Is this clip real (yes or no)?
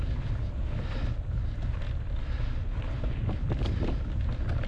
yes